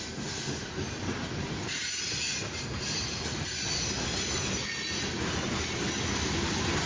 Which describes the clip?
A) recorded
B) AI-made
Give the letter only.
A